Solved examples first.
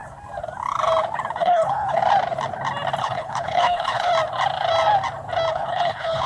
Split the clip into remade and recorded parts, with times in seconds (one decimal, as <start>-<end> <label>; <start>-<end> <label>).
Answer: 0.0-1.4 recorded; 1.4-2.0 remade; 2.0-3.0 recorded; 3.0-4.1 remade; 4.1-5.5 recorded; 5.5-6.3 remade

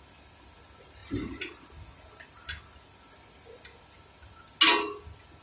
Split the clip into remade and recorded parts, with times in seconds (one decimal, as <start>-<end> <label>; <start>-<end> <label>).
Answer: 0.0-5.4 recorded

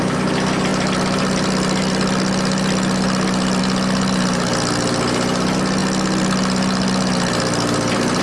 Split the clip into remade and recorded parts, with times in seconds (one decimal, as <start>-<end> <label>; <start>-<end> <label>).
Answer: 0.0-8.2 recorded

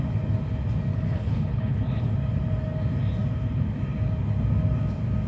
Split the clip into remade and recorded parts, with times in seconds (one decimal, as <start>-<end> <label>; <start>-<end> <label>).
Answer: 0.0-0.9 recorded; 0.9-2.1 remade; 2.1-5.3 recorded

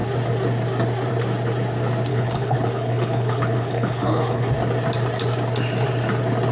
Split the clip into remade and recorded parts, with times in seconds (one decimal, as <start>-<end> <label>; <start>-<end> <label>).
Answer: 0.0-2.1 recorded; 2.1-4.5 remade; 4.5-6.5 recorded

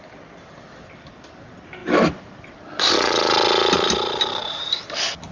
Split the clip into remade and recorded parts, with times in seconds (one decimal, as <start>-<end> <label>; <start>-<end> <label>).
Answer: 0.0-5.3 recorded

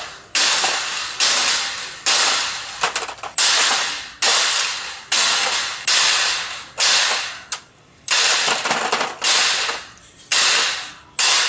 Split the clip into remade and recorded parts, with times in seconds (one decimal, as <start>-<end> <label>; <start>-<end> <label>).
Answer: 0.0-11.5 recorded

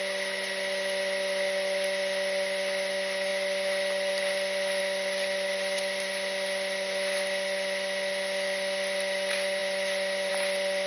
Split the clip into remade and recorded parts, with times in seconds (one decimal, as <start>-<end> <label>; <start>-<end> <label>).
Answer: 0.0-10.9 recorded